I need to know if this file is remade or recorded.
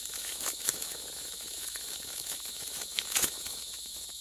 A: remade